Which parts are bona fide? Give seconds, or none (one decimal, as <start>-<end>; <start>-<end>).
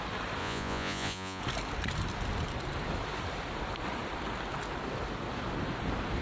0.0-0.4; 1.4-6.2